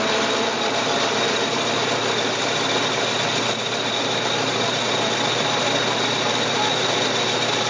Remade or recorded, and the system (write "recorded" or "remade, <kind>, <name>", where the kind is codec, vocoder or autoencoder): recorded